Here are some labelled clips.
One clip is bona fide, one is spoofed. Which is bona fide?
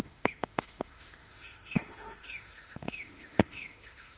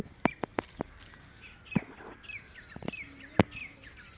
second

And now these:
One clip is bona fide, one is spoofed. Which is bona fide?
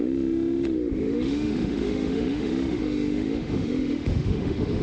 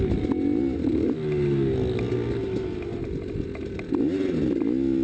second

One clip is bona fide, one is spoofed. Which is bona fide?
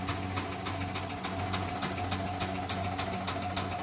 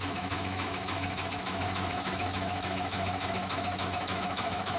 first